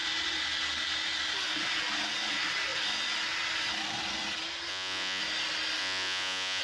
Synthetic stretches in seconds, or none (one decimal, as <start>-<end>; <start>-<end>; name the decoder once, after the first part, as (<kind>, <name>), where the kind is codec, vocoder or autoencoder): 4.7-5.2 (vocoder, Vocos); 5.8-6.6